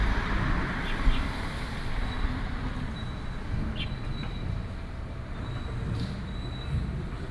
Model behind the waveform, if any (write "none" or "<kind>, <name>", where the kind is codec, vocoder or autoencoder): vocoder, BigVGAN v2